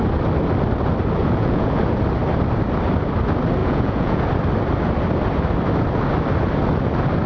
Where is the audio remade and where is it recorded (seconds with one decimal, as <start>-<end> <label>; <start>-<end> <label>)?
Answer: 0.0-1.2 recorded; 1.2-1.8 remade; 1.8-3.6 recorded; 3.6-4.3 remade; 4.3-7.3 recorded